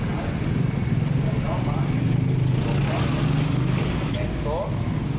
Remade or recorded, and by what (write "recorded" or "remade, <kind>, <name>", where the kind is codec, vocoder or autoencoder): recorded